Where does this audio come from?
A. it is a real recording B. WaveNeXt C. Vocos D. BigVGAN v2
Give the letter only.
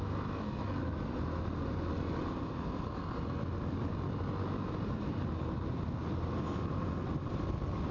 A